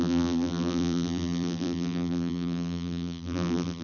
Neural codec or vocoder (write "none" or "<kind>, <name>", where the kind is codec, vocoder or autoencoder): vocoder, BigVGAN v2